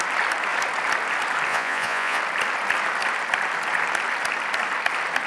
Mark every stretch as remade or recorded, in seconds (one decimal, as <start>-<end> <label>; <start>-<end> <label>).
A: 0.0-1.5 recorded; 1.5-2.2 remade; 2.2-5.3 recorded